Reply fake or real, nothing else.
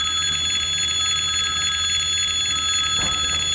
real